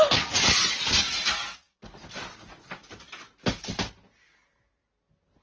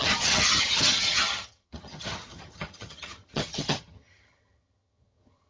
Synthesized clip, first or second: second